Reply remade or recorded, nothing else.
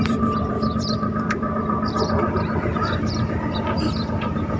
remade